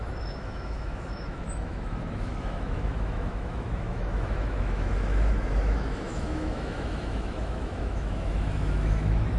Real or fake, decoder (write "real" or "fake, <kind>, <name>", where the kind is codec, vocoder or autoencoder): fake, autoencoder, DAC-VAE